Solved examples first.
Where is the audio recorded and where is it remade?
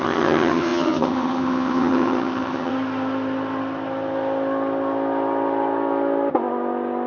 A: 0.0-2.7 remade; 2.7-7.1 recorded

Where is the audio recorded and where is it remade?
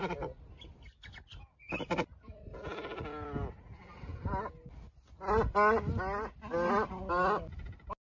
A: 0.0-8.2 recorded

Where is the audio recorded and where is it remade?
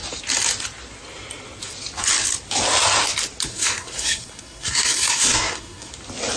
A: 0.0-3.5 recorded; 3.5-5.9 remade; 5.9-6.4 recorded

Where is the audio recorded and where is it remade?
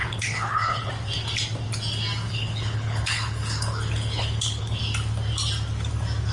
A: 0.0-0.9 remade; 0.9-2.3 recorded; 2.3-4.8 remade; 4.8-6.3 recorded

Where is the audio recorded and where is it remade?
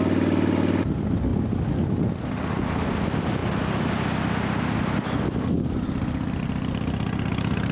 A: 0.0-7.7 recorded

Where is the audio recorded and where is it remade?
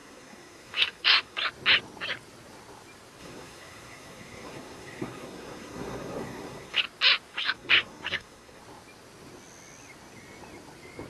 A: 0.0-1.4 remade; 1.4-3.2 recorded; 3.2-6.8 remade; 6.8-7.3 recorded; 7.3-8.6 remade; 8.6-11.1 recorded